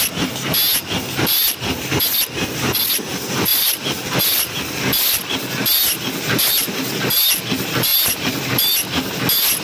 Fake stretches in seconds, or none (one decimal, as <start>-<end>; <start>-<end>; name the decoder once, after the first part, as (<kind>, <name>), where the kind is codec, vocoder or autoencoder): 3.5-4.2 (vocoder, BigVGAN v2); 7.9-8.6